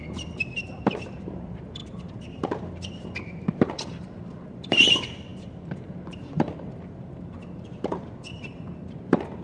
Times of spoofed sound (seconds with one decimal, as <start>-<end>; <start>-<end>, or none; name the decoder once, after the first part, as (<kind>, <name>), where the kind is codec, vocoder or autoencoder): 0.0-9.4 (vocoder, BigVGAN v2)

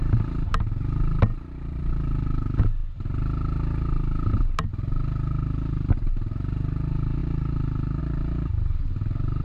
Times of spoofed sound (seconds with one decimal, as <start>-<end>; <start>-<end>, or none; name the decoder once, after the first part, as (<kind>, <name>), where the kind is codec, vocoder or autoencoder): 1.3-1.9 (vocoder, BigVGAN v2)

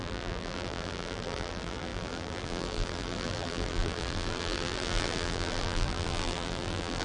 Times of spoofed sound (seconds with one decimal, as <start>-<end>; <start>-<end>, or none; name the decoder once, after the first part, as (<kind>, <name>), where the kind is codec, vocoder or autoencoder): 0.0-7.0 (vocoder, BigVGAN v2)

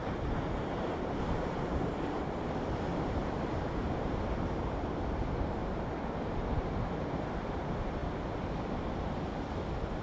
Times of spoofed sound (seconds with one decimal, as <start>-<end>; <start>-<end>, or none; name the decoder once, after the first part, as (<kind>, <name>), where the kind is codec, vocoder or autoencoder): 0.0-2.2 (vocoder, BigVGAN v2); 2.9-4.8

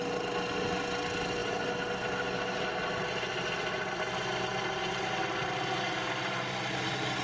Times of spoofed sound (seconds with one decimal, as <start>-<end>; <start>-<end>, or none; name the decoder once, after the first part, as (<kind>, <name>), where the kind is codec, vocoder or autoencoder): none

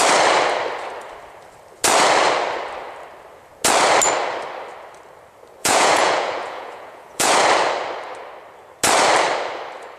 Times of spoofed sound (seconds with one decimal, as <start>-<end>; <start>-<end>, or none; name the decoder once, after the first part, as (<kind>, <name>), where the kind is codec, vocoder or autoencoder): 5.6-7.3 (vocoder, Vocos)

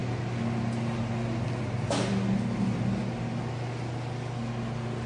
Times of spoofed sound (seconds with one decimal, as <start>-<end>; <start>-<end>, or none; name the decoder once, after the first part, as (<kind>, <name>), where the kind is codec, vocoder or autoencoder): none